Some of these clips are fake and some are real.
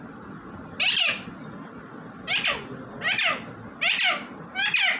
real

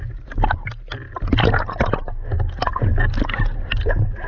real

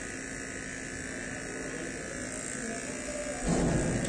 real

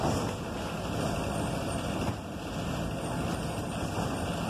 real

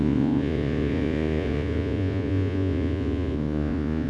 fake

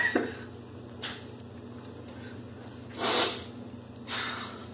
real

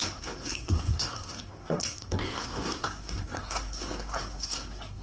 fake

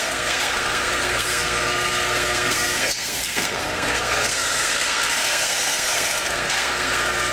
fake